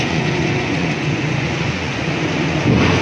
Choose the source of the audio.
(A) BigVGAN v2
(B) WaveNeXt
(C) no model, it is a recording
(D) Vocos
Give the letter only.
D